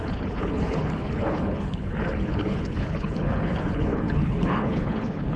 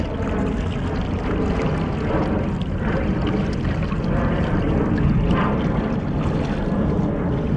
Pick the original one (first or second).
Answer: second